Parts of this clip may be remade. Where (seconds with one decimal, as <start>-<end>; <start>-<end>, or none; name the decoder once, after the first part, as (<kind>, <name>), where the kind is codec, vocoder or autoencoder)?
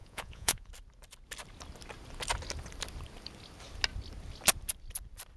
0.0-0.7 (vocoder, Vocos)